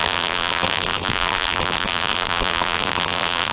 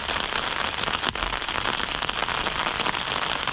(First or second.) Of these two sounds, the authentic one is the second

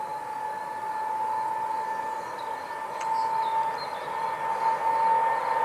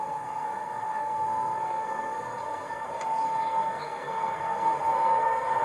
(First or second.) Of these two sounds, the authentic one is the first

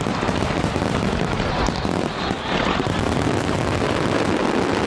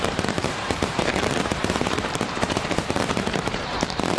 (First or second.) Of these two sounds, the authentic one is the first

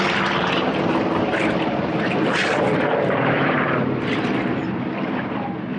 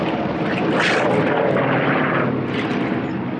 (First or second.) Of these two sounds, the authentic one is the second